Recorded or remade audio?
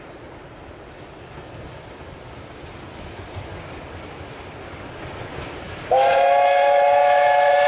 recorded